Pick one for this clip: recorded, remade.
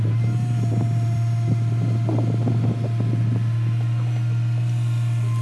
recorded